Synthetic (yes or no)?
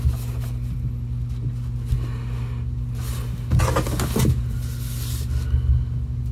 no